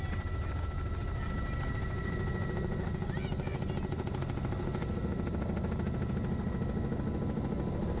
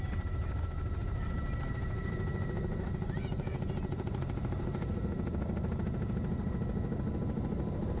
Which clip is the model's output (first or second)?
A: second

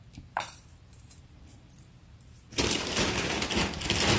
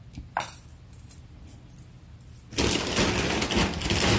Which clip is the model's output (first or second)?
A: first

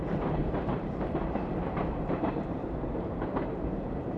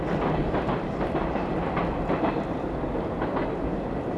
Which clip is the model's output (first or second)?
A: first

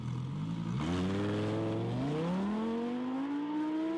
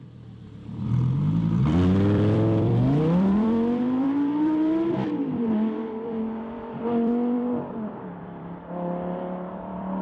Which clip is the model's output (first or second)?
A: second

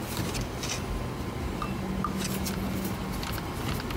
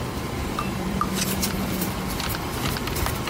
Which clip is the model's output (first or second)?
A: second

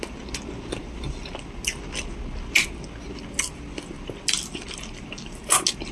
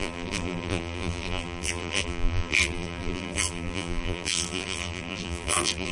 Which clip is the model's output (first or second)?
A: second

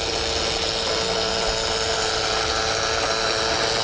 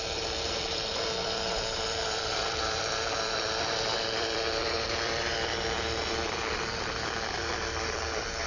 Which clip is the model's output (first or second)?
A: second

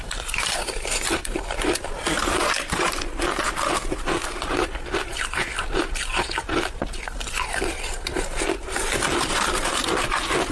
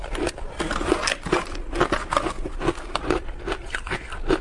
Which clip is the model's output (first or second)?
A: first